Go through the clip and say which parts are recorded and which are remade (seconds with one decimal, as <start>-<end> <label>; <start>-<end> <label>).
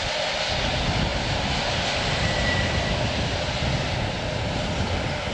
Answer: 0.0-5.3 recorded